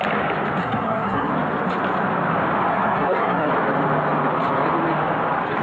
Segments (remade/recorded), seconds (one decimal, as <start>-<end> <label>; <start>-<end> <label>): 0.0-0.6 recorded; 0.6-1.3 remade; 1.3-2.7 recorded; 2.7-3.5 remade; 3.5-5.6 recorded